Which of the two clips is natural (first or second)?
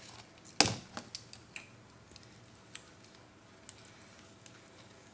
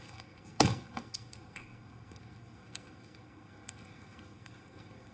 first